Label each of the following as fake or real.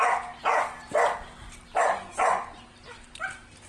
real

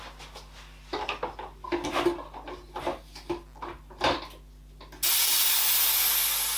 real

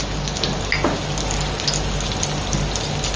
real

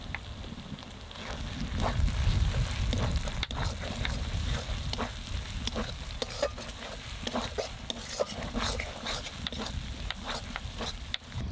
real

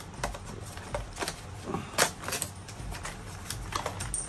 real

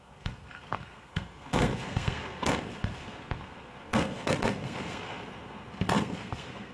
fake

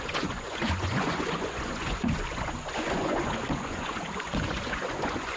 fake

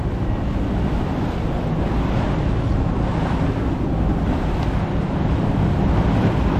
real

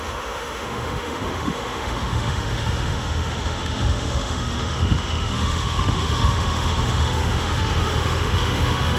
fake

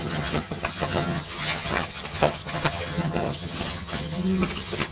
fake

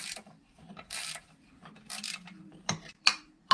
fake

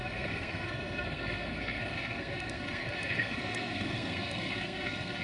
fake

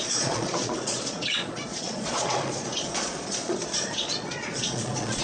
fake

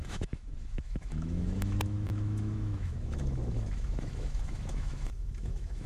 fake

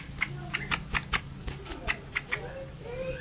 real